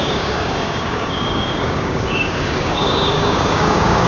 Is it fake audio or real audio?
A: fake